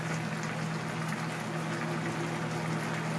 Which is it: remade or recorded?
recorded